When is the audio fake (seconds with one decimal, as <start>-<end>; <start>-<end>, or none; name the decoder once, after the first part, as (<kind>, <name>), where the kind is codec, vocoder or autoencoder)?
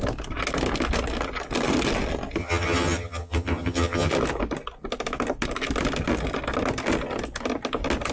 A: 2.4-4.1 (vocoder, HiFi-GAN)